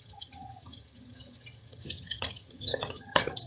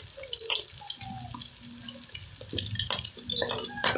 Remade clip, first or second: first